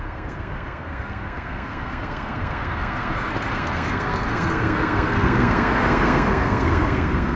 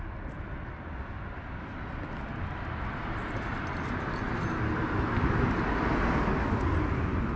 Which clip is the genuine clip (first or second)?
second